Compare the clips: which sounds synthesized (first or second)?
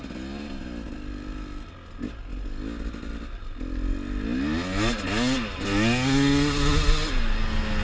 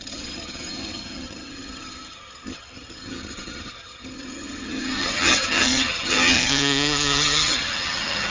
second